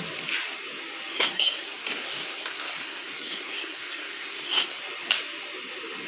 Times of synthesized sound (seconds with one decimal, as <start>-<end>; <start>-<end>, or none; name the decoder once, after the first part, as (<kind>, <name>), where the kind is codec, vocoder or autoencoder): 1.1-4.8 (codec, SNAC)